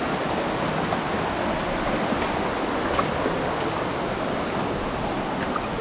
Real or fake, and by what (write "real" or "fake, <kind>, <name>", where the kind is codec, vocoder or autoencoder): real